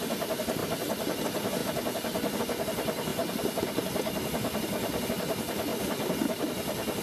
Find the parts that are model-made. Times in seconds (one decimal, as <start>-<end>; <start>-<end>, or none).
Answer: 0.0-0.6; 1.2-1.6; 2.4-7.0